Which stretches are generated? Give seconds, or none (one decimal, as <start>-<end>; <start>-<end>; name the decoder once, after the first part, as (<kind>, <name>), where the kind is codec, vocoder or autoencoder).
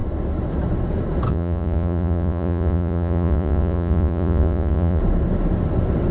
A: 1.3-5.0 (vocoder, Vocos)